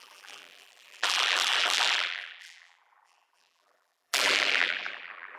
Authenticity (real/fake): fake